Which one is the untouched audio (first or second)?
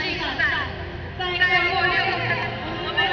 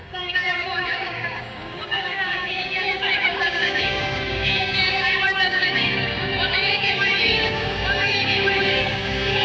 first